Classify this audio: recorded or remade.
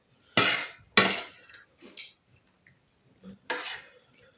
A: recorded